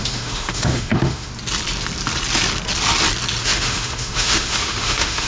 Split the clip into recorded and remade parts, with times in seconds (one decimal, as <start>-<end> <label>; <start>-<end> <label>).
0.0-1.3 remade; 1.3-3.4 recorded; 3.4-5.3 remade